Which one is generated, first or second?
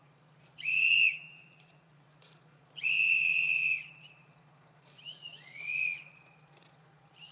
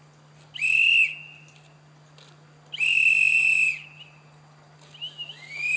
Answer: first